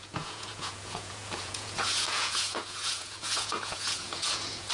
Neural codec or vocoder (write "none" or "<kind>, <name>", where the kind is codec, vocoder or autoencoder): vocoder, Vocos